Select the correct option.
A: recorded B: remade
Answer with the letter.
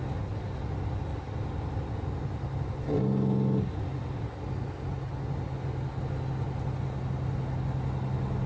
A